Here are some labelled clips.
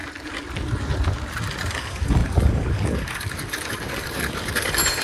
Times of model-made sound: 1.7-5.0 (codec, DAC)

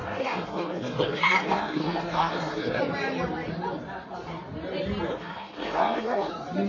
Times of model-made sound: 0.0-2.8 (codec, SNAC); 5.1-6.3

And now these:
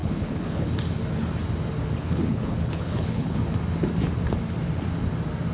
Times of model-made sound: 0.0-0.7 (codec, HILCodec); 2.0-3.4

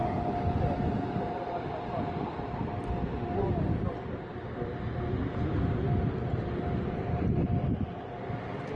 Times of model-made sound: none